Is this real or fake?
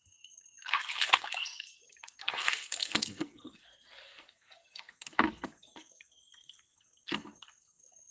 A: fake